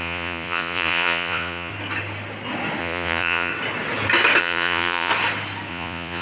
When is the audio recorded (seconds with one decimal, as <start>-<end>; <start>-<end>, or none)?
1.7-2.8; 3.5-4.4; 5.1-5.7